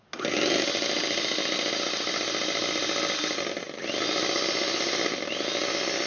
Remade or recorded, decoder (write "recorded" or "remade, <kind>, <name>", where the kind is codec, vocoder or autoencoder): recorded